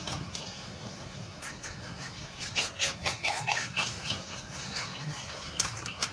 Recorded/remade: remade